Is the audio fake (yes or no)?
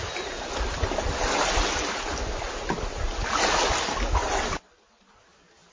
no